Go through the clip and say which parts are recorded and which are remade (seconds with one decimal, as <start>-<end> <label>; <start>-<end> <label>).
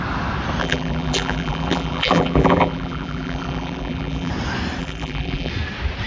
0.0-0.6 recorded; 0.6-4.3 remade; 4.3-4.8 recorded; 4.8-5.5 remade; 5.5-6.1 recorded